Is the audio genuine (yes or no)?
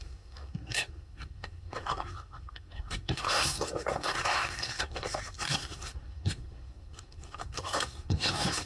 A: no